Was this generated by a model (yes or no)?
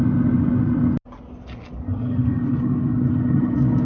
no